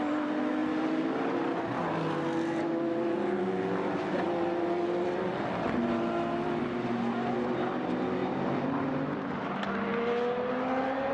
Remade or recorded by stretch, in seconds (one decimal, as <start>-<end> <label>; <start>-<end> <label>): 0.0-11.1 recorded